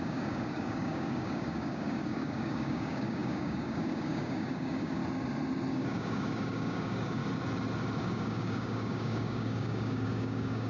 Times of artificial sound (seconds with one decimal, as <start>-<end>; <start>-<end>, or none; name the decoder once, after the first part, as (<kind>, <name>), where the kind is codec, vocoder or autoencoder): 0.0-5.0 (codec, DAC); 5.7-7.2; 8.0-10.7